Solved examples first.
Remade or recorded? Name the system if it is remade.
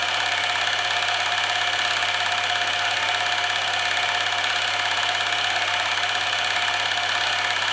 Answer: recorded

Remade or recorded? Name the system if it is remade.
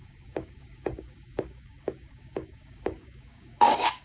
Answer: remade, codec, DAC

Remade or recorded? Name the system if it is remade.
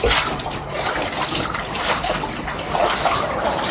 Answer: recorded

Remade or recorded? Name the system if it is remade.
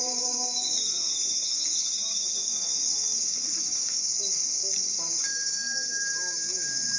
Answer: remade, codec, DAC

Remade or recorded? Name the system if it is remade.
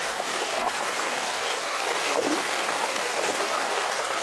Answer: remade, codec, DAC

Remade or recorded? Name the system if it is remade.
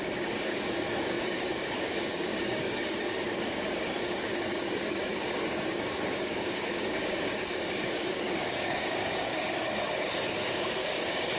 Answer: remade, codec, DAC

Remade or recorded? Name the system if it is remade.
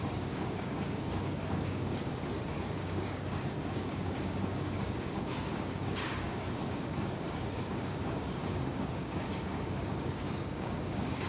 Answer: remade, codec, DAC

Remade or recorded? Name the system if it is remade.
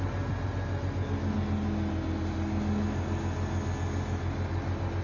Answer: recorded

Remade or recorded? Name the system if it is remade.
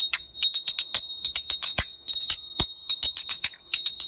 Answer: remade, codec, DAC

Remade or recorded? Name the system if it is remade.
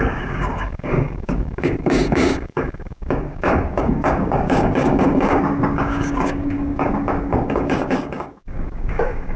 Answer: remade, codec, DAC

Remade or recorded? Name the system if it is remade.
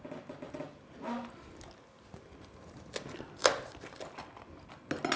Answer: recorded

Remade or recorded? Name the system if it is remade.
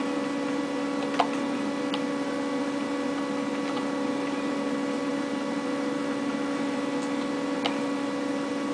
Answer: recorded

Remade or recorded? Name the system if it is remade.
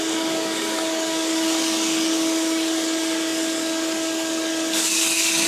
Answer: remade, codec, DAC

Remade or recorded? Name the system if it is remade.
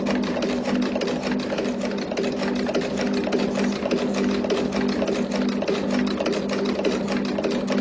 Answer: recorded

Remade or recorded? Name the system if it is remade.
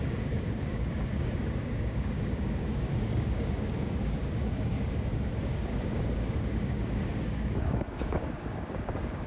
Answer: remade, codec, DAC